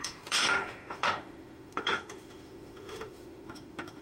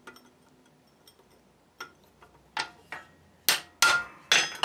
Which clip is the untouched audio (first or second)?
second